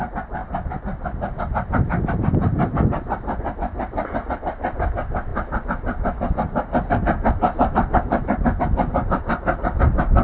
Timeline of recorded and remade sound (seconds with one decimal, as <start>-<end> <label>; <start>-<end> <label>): 0.0-10.2 recorded